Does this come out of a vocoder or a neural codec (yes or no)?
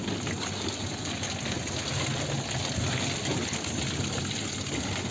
no